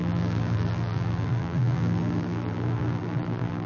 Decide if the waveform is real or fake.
fake